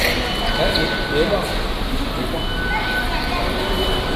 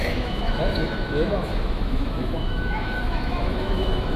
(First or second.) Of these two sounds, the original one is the first